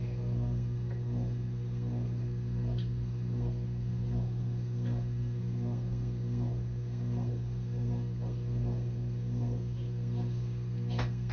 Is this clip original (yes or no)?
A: no